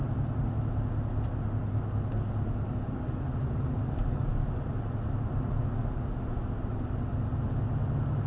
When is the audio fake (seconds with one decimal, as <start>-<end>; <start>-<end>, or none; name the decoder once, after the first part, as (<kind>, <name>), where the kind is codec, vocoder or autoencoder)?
none